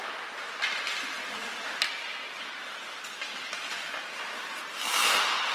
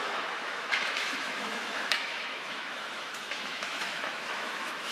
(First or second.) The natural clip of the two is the first